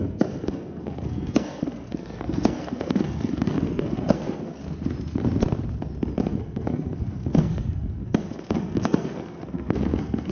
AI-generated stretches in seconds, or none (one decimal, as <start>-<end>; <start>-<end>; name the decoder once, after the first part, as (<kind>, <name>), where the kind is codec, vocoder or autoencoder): 0.0-4.6 (codec, SNAC); 6.2-10.3